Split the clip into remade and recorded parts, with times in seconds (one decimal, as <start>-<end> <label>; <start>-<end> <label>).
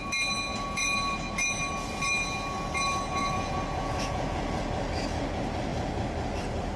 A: 0.0-0.5 recorded; 0.5-1.1 remade; 1.1-3.2 recorded; 3.2-4.4 remade; 4.4-6.8 recorded